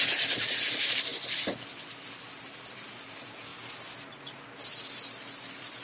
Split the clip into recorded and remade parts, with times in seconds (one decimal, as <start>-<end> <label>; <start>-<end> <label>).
0.0-3.5 remade; 3.5-4.7 recorded; 4.7-5.8 remade